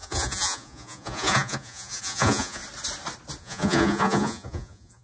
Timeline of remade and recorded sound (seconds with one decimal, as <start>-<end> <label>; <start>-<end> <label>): 0.0-2.6 remade; 2.6-3.4 recorded; 3.4-5.0 remade